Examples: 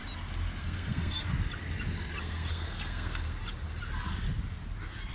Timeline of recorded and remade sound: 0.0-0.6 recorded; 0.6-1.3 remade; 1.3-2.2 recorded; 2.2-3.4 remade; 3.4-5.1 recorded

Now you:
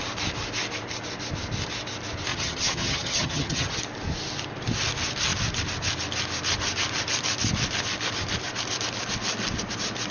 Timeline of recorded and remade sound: 0.0-2.3 recorded; 2.3-3.8 remade; 3.8-10.1 recorded